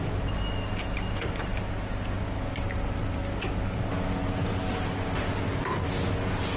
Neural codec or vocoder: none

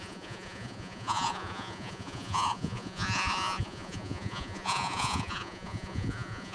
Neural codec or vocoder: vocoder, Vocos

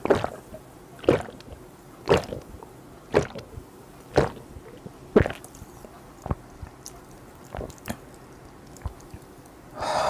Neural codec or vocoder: none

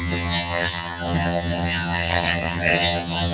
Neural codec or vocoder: vocoder, HiFi-GAN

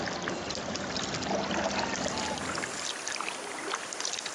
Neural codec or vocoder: none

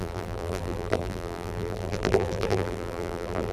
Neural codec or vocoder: vocoder, BigVGAN v2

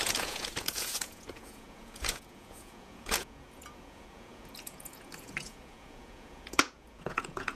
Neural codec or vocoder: vocoder, Vocos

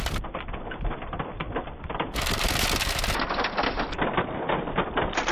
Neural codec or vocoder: none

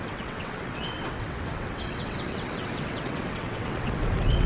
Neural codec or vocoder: vocoder, WaveNeXt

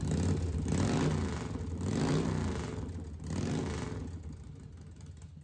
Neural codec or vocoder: none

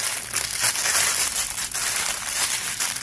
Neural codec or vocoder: none